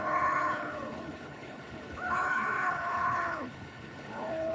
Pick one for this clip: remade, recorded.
remade